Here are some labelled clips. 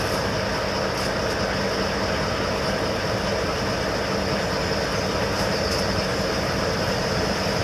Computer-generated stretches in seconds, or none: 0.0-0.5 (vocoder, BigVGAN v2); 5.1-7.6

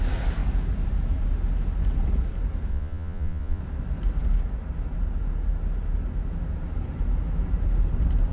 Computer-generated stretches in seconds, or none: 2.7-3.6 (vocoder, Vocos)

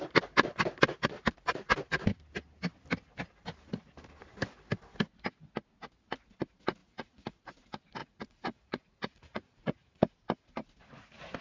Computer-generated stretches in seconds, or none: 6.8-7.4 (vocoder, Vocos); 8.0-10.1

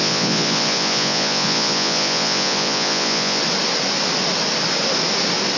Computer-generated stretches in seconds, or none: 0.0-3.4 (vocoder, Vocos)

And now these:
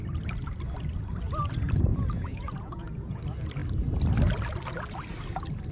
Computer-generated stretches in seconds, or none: 1.9-3.2 (vocoder, Vocos)

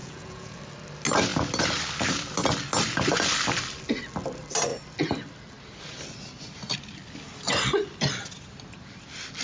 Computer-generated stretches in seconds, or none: 0.0-0.6 (vocoder, Vocos)

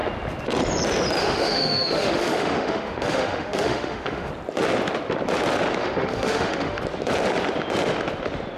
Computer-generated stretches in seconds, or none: 1.2-4.3 (autoencoder, DAC-VAE); 5.8-6.8